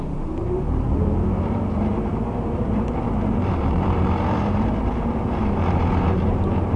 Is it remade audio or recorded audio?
remade